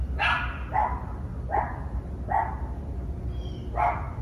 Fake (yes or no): no